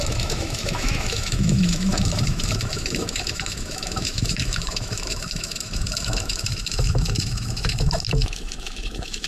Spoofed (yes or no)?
yes